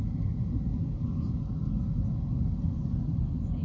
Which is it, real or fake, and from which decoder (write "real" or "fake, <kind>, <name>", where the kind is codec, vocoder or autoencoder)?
real